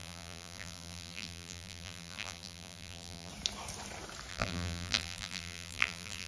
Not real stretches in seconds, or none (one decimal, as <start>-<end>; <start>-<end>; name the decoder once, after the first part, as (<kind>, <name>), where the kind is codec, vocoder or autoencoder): 0.0-3.3 (vocoder, BigVGAN v2); 4.3-6.3